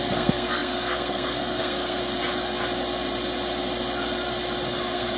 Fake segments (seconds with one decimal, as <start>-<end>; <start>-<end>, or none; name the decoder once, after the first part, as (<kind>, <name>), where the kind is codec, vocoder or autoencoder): 0.0-2.0 (codec, SNAC); 4.7-5.2